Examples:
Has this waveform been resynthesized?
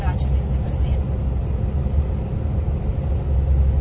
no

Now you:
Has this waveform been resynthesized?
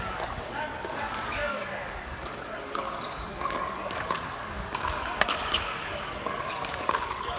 yes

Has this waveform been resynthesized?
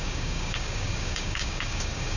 yes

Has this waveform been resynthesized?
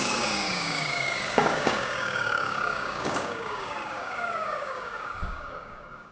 yes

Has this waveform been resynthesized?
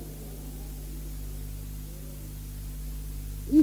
no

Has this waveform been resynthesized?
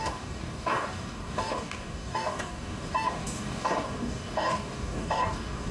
yes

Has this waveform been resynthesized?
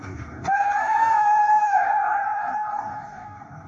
yes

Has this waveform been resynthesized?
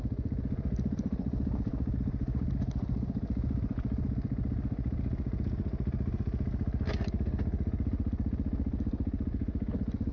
no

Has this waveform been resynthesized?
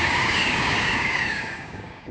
yes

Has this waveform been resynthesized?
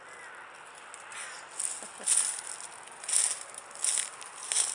no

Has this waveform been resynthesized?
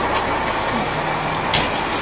no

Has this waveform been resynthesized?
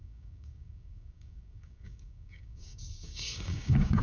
yes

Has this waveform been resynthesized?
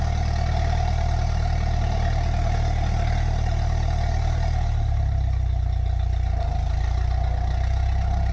no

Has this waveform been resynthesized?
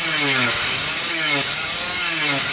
yes